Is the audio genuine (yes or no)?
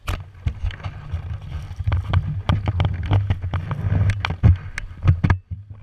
yes